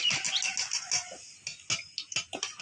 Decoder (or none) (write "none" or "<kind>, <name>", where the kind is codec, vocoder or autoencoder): none